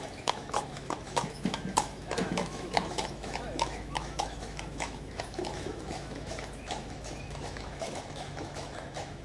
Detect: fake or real fake